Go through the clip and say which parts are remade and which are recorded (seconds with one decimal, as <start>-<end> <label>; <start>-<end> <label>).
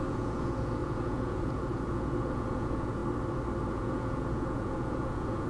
0.0-3.0 remade; 3.0-3.7 recorded; 3.7-5.5 remade